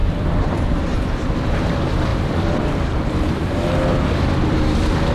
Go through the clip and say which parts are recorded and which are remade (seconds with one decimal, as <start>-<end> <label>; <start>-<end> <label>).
0.0-5.1 remade